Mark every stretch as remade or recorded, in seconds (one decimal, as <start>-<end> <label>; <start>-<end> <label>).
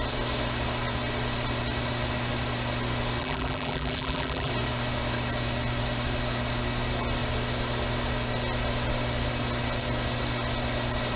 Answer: 0.0-3.2 recorded; 3.2-4.5 remade; 4.5-11.2 recorded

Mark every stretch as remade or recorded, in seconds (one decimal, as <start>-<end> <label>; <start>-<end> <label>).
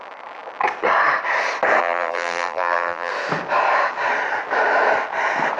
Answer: 0.0-1.8 recorded; 1.8-3.1 remade; 3.1-5.6 recorded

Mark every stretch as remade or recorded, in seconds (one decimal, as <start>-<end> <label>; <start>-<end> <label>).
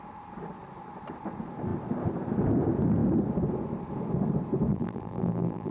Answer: 0.0-4.7 recorded; 4.7-5.7 remade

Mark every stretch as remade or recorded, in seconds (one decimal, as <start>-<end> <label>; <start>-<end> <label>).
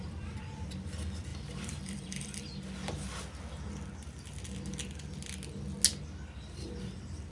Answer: 0.0-2.5 remade; 2.5-6.5 recorded; 6.5-7.3 remade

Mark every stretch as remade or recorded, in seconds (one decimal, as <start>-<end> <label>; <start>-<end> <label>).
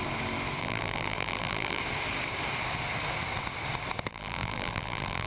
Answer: 0.0-0.6 recorded; 0.6-1.8 remade; 1.8-4.1 recorded; 4.1-5.3 remade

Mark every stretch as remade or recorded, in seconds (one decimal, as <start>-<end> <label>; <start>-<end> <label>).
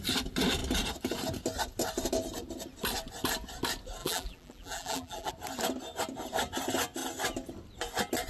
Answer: 0.0-4.0 recorded; 4.0-5.3 remade; 5.3-8.3 recorded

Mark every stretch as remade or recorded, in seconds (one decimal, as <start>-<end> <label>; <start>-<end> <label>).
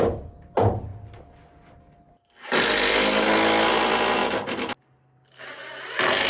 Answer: 0.0-6.3 recorded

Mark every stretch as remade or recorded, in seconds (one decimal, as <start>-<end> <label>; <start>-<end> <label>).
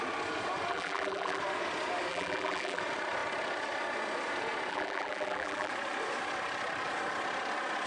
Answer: 0.0-0.7 recorded; 0.7-1.4 remade; 1.4-2.1 recorded; 2.1-2.8 remade; 2.8-4.7 recorded; 4.7-5.7 remade; 5.7-7.9 recorded